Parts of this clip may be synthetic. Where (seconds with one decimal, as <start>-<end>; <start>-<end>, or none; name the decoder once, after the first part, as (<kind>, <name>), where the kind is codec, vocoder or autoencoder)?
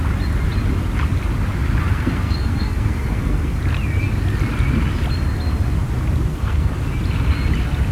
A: 1.9-3.6 (codec, SNAC); 6.3-6.8